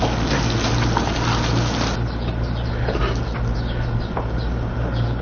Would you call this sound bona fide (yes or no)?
yes